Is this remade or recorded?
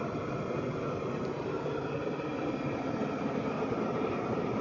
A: remade